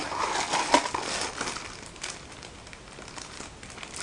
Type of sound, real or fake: real